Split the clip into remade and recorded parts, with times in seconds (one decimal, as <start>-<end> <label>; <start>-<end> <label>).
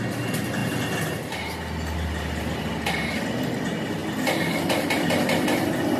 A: 0.0-6.0 recorded